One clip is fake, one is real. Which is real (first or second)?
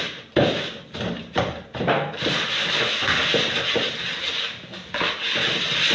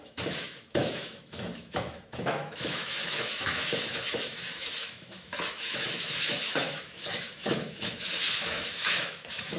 first